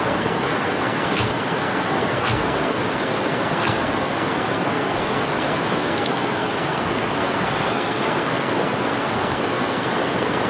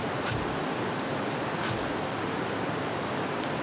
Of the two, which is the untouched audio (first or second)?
second